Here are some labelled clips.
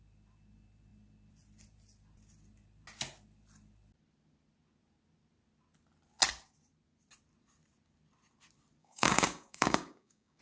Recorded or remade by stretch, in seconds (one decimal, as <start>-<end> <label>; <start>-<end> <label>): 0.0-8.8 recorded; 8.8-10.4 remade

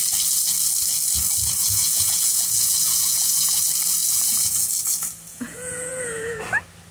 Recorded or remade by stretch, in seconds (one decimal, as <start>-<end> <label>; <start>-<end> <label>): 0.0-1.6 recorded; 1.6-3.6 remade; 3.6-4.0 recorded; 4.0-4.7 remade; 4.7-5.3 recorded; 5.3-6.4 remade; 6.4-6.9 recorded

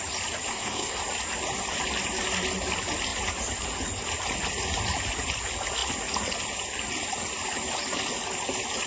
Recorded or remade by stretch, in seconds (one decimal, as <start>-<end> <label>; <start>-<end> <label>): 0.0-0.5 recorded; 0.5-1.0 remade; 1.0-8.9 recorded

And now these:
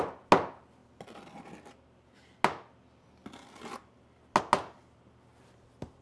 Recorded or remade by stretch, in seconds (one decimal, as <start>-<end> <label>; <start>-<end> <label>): 0.0-6.0 recorded

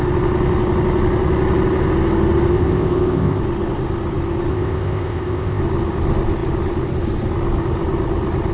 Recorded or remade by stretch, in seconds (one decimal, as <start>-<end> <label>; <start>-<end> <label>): 0.0-2.5 recorded; 2.5-3.4 remade; 3.4-4.5 recorded; 4.5-5.6 remade; 5.6-8.5 recorded

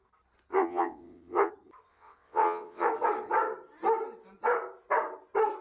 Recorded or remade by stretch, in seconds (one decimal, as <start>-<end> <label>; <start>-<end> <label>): 0.0-0.5 recorded; 0.5-1.5 remade; 1.5-1.9 recorded; 1.9-2.9 remade; 2.9-5.6 recorded

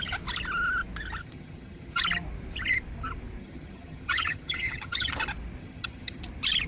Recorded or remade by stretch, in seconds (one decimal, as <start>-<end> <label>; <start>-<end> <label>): 0.0-1.2 recorded; 1.2-2.0 remade; 2.0-3.4 recorded; 3.4-5.1 remade; 5.1-5.6 recorded; 5.6-6.2 remade; 6.2-6.7 recorded